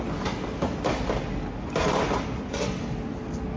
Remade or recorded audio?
recorded